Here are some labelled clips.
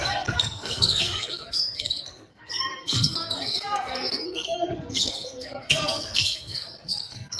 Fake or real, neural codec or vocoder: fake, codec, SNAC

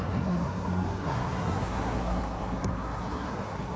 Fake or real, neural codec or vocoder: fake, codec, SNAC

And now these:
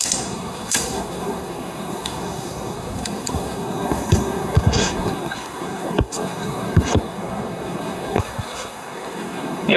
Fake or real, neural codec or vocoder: fake, codec, SNAC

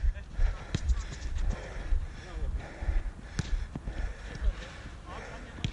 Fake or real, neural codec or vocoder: real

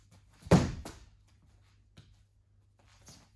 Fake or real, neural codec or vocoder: real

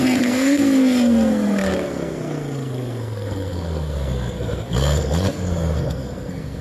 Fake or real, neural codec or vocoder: fake, codec, SNAC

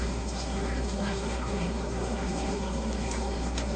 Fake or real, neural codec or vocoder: fake, codec, SNAC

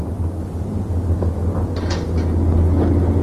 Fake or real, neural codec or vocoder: real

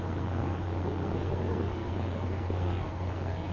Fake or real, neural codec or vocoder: fake, codec, SNAC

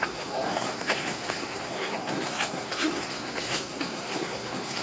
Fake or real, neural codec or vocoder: fake, codec, SNAC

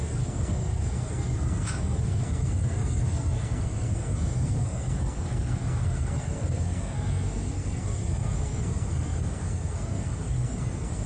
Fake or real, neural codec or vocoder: fake, codec, SNAC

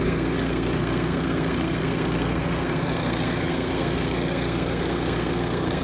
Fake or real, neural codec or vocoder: fake, codec, SNAC